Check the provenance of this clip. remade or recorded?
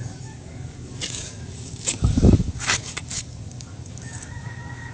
remade